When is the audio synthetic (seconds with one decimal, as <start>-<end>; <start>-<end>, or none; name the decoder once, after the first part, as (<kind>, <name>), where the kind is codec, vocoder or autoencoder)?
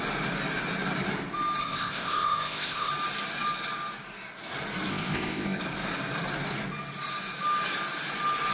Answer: 1.6-2.9 (codec, ZipCodec); 4.9-5.6